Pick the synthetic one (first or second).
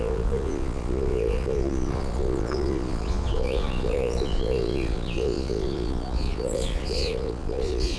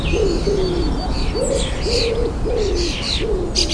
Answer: first